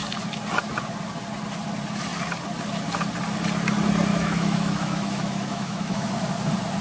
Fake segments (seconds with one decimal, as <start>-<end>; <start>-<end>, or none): 4.1-6.1